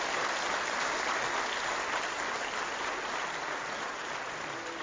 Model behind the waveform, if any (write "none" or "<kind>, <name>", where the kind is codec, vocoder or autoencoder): none